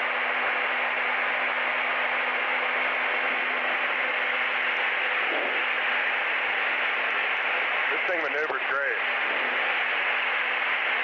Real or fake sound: real